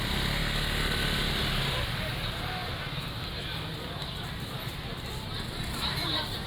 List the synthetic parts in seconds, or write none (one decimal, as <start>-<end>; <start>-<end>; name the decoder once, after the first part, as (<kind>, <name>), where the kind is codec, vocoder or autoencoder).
none